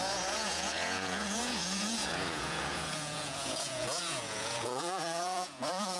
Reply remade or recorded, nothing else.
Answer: remade